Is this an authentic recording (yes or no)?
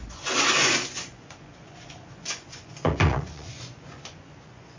no